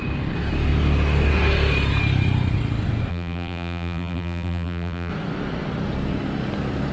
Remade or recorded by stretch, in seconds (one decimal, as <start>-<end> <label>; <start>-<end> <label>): 0.0-3.1 recorded; 3.1-5.1 remade; 5.1-6.9 recorded

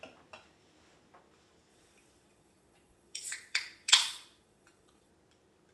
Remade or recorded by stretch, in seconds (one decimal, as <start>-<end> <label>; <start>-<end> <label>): 0.0-1.7 recorded; 1.7-5.1 remade; 5.1-5.7 recorded

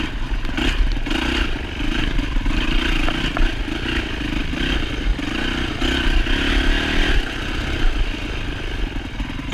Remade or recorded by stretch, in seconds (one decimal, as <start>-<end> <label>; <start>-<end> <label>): 0.0-9.5 recorded

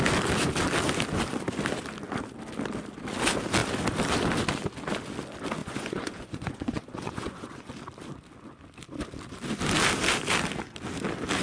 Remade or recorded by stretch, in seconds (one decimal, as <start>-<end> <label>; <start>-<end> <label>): 0.0-5.6 recorded; 5.6-7.6 remade; 7.6-11.4 recorded

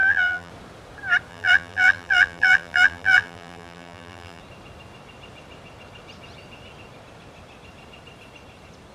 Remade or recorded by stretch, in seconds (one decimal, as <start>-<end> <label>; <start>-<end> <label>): 0.0-0.5 remade; 0.5-1.3 recorded; 1.3-4.4 remade; 4.4-8.9 recorded

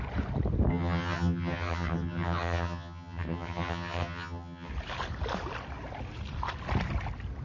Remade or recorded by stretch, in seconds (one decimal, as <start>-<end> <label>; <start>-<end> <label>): 0.0-0.7 recorded; 0.7-4.7 remade; 4.7-7.4 recorded

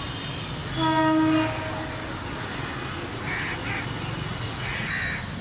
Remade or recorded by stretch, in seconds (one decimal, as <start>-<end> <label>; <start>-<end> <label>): 0.0-4.3 recorded; 4.3-4.9 remade; 4.9-5.4 recorded

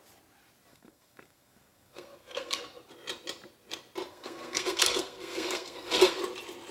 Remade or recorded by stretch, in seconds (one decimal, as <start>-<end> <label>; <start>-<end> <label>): 0.0-0.7 recorded; 0.7-2.6 remade; 2.6-4.1 recorded; 4.1-6.2 remade; 6.2-6.7 recorded